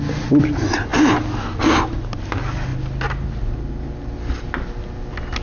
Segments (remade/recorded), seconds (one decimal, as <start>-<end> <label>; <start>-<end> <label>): 0.0-5.4 recorded